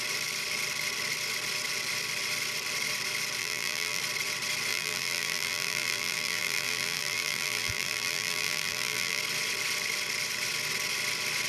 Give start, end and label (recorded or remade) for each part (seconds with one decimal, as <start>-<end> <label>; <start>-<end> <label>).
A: 0.0-3.4 recorded; 3.4-4.0 remade; 4.0-4.7 recorded; 4.7-9.2 remade; 9.2-11.5 recorded